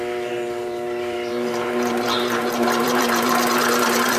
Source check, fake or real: fake